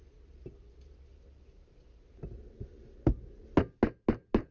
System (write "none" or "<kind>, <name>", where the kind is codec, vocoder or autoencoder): none